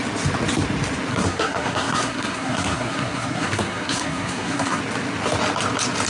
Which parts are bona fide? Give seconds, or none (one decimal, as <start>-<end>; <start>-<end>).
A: 0.0-1.1; 4.8-6.1

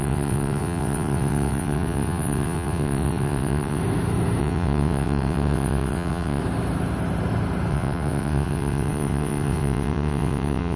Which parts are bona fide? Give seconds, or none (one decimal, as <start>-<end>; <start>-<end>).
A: 3.8-4.4; 6.4-7.7

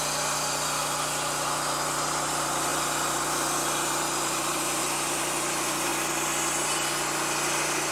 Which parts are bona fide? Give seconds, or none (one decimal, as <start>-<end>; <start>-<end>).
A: 0.0-7.9

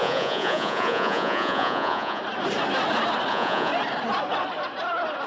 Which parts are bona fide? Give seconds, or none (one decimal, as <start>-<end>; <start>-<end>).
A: 2.2-3.3; 3.7-5.3

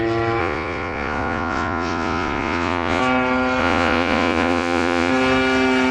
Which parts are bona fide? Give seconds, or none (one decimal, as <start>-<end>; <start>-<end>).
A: 0.0-0.4; 3.0-3.6; 5.1-5.9

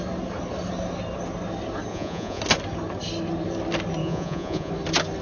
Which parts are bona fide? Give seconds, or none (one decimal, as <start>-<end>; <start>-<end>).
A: 0.0-1.9; 2.4-4.0; 4.7-5.2